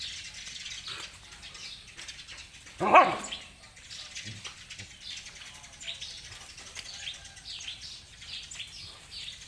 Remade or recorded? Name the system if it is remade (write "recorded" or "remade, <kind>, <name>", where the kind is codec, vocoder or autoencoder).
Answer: recorded